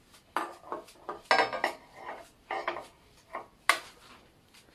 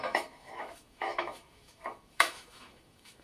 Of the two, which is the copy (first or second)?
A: second